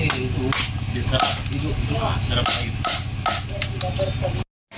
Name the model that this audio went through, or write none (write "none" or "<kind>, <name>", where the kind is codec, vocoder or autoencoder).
none